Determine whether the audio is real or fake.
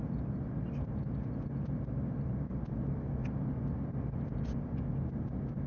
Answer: real